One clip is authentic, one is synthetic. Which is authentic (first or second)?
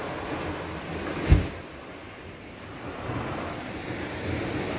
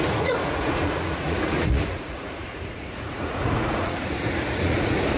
first